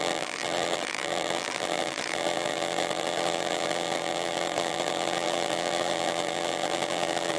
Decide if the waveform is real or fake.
fake